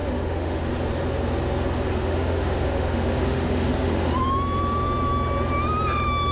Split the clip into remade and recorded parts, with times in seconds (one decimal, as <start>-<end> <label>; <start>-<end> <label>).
0.0-0.6 remade; 0.6-1.9 recorded; 1.9-4.1 remade; 4.1-6.3 recorded